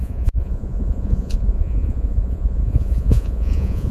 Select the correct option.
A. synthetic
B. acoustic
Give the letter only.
A